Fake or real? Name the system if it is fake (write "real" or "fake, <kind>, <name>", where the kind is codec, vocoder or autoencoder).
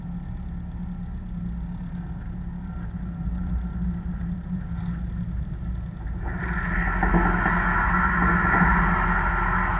real